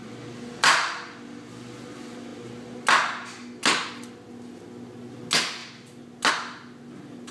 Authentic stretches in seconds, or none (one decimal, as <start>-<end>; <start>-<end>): 0.0-7.3